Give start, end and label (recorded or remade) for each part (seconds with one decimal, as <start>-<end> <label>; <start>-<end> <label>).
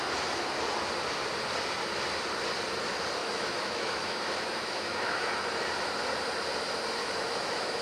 0.0-3.2 recorded; 3.2-5.3 remade; 5.3-7.0 recorded; 7.0-7.8 remade